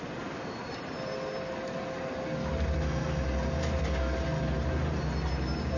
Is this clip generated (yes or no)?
no